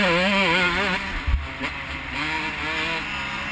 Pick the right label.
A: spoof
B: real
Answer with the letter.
B